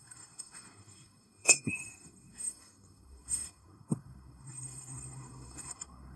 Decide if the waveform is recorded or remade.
remade